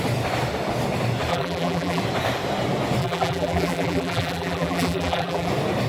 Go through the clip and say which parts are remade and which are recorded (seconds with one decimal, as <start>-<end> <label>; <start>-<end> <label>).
0.0-1.3 recorded; 1.3-2.0 remade; 2.0-3.0 recorded; 3.0-5.5 remade; 5.5-5.9 recorded